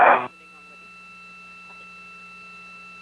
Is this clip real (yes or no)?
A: yes